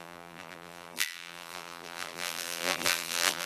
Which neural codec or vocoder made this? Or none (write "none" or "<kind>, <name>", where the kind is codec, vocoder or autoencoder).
vocoder, BigVGAN v2